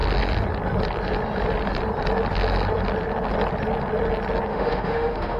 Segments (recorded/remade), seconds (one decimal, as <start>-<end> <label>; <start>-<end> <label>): 0.0-4.5 recorded; 4.5-5.4 remade

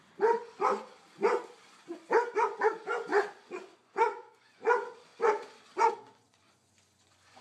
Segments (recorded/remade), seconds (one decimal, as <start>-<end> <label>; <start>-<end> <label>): 0.0-0.9 remade; 0.9-1.6 recorded; 1.6-5.1 remade; 5.1-5.9 recorded; 5.9-7.4 remade